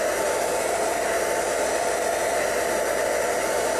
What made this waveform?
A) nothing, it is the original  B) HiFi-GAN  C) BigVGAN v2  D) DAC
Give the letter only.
A